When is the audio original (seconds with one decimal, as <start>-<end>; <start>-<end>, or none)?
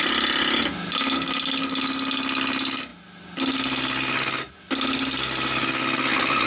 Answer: 0.0-6.5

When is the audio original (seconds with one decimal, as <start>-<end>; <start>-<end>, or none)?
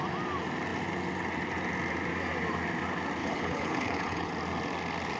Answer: 0.0-3.2; 4.3-5.2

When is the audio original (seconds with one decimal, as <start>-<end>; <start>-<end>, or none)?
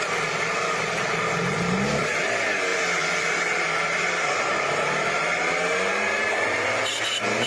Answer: 0.0-2.7; 7.0-7.5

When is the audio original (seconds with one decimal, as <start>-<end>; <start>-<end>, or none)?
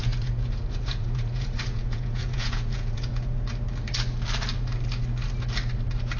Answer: 3.5-6.2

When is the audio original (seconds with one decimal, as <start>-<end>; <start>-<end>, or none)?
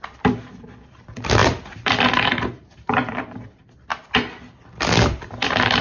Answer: 3.9-5.3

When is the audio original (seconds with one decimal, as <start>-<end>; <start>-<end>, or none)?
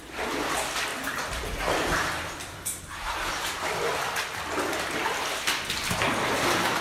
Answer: 0.0-6.8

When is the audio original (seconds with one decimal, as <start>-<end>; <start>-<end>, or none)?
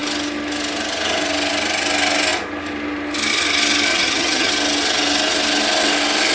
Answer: 0.0-3.9; 4.5-6.3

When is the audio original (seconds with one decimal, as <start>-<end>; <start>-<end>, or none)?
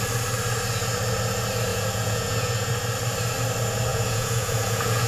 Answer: 0.0-1.7; 2.7-3.9